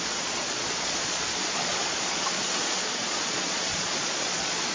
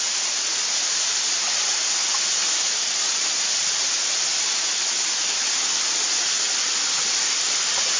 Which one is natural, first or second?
second